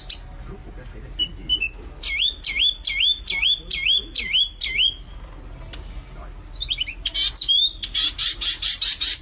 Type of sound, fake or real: real